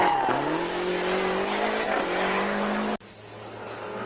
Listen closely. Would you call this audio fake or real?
real